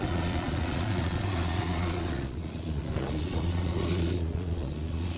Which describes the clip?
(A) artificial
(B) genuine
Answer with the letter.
A